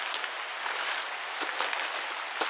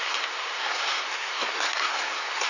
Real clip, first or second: first